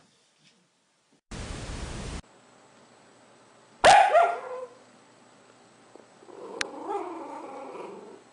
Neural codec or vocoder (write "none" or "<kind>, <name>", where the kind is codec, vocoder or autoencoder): none